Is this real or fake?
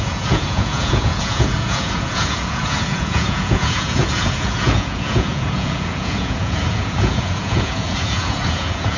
fake